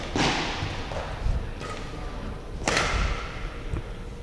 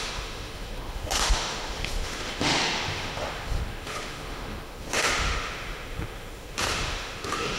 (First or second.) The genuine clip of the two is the first